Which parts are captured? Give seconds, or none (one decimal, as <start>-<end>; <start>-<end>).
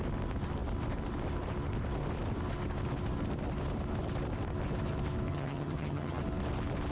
0.0-5.3; 6.2-6.9